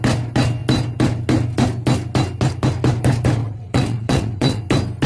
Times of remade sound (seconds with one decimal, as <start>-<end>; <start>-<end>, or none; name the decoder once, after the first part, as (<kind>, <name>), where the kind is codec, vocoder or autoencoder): 3.4-4.6 (vocoder, WaveNeXt)